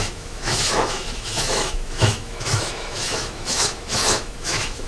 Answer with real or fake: fake